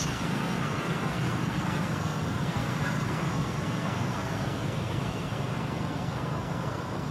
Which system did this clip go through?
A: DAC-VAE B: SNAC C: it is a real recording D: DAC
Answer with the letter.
B